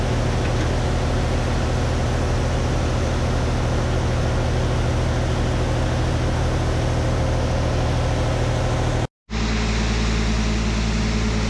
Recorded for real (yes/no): yes